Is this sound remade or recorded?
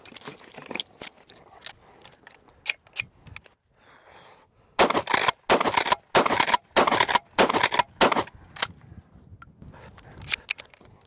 recorded